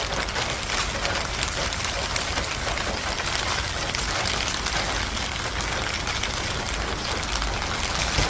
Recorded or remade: recorded